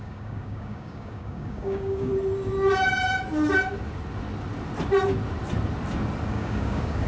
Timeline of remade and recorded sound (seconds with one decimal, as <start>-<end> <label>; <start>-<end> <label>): 0.0-2.1 remade; 2.1-6.3 recorded; 6.3-7.1 remade